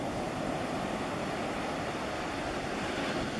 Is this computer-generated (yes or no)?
no